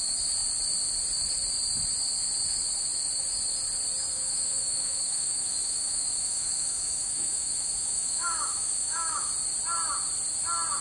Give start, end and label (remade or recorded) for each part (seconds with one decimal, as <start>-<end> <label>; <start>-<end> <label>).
0.0-4.1 recorded; 4.1-9.3 remade; 9.3-10.8 recorded